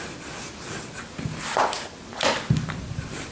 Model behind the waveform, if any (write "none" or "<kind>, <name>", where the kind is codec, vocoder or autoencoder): none